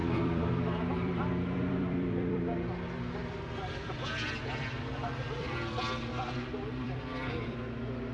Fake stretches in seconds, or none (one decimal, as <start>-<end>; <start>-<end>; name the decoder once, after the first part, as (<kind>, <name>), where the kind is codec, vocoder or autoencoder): 0.0-2.4 (vocoder, BigVGAN v2); 3.2-7.0

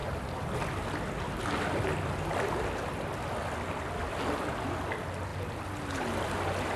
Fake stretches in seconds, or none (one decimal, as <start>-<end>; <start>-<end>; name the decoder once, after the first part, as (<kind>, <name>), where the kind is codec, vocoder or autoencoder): none

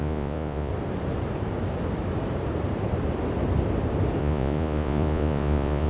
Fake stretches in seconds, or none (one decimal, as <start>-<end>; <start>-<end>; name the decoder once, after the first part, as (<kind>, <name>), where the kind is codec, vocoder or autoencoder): 0.0-0.7 (vocoder, Vocos); 4.2-5.9

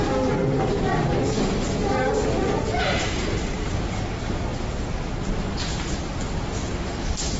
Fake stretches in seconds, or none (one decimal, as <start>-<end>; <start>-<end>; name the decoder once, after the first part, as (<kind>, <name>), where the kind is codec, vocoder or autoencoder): 2.1-3.7 (vocoder, BigVGAN v2)

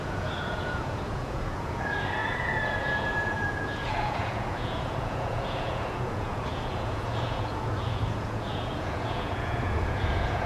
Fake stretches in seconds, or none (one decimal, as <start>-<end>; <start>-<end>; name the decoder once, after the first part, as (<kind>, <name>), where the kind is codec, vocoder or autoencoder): 0.0-10.5 (vocoder, Vocos)